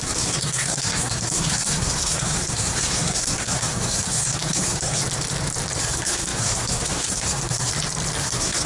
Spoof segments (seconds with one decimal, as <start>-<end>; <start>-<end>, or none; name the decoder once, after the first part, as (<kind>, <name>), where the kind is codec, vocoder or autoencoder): 0.0-5.0 (codec, SNAC); 5.8-7.7; 8.2-8.7